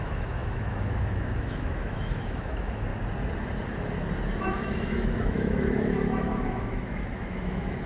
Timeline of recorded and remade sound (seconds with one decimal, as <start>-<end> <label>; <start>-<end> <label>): 0.0-2.9 remade; 2.9-4.4 recorded; 4.4-7.9 remade